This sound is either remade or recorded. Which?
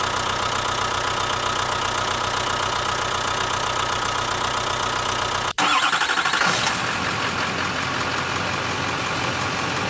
recorded